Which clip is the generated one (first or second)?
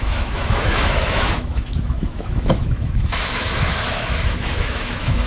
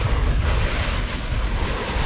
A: first